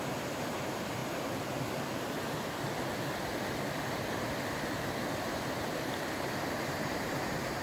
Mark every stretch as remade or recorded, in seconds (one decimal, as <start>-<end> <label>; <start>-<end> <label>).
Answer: 0.0-1.0 remade; 1.0-4.7 recorded; 4.7-7.6 remade